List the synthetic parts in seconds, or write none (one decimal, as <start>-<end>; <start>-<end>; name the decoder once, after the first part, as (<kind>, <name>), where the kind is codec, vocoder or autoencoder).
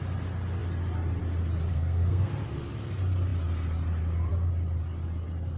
1.7-2.3 (codec, SNAC)